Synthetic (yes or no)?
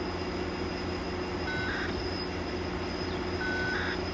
no